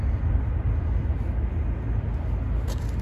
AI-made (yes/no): no